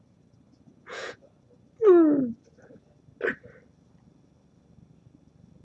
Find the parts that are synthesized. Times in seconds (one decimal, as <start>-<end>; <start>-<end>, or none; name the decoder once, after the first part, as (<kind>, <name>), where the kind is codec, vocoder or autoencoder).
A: 0.7-1.3 (vocoder, Vocos)